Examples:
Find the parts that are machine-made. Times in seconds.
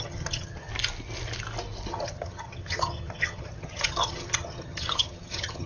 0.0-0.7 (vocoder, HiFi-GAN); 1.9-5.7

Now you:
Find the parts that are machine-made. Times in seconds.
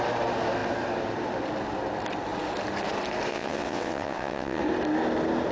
3.3-4.6 (vocoder, WaveNeXt)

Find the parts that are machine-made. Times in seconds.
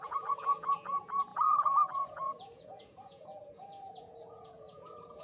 0.0-5.2 (vocoder, Vocos)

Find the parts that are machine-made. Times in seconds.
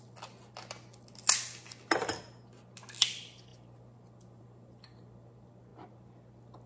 none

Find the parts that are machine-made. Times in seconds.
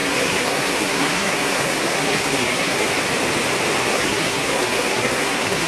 0.0-2.9 (codec, SNAC); 3.8-5.7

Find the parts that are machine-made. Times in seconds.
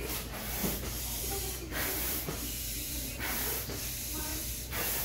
0.0-5.0 (vocoder, BigVGAN v2)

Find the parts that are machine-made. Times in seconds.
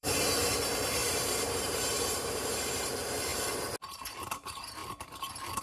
0.0-3.3 (vocoder, BigVGAN v2); 3.8-5.6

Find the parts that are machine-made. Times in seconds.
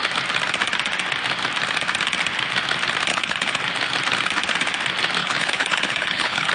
3.1-3.6 (codec, HILCodec); 5.2-6.5